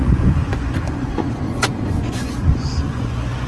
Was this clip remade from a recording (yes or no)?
yes